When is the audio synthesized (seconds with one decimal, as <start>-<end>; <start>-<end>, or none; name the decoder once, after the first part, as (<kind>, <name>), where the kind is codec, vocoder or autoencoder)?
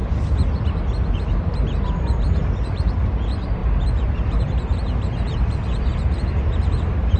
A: 1.1-7.2 (vocoder, BigVGAN v2)